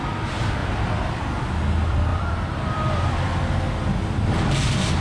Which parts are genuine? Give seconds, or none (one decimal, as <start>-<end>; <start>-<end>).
0.0-0.6; 1.2-2.1; 3.1-5.0